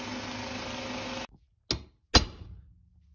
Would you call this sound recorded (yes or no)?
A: yes